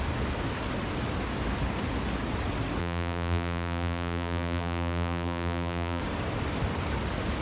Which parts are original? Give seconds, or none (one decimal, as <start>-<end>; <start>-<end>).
0.0-2.8; 6.0-7.4